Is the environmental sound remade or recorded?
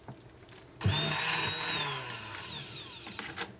recorded